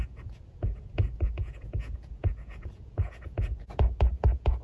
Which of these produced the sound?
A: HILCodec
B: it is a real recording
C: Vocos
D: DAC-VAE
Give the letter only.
C